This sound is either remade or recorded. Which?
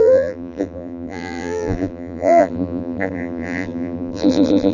remade